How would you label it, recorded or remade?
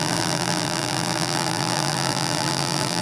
remade